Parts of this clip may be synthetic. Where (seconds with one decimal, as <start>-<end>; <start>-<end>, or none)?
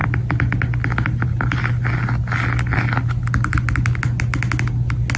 none